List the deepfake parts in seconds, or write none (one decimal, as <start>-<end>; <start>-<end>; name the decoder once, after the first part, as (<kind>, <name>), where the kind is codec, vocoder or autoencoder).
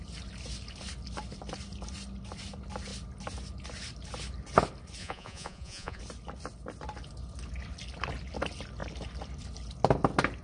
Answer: 5.0-6.0 (vocoder, Vocos)